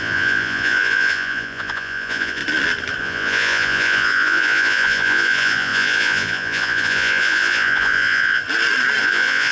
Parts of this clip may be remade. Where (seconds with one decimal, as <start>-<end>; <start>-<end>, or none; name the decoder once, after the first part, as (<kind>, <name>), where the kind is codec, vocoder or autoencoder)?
0.0-2.4 (vocoder, Vocos); 3.0-8.4; 9.0-9.5